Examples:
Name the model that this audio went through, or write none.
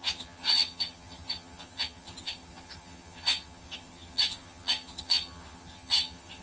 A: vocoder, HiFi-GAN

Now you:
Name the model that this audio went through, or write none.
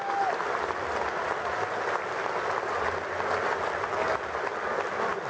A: none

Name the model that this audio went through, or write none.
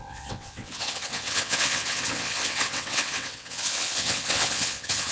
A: vocoder, WaveNeXt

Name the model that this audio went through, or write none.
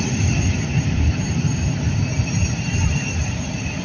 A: vocoder, BigVGAN v2